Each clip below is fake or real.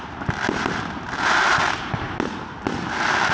real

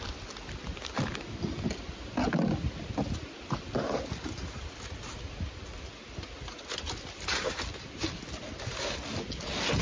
real